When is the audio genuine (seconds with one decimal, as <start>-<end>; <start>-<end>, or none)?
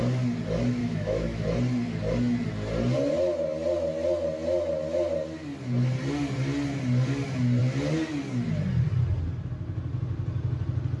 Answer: 0.0-0.8; 1.4-11.0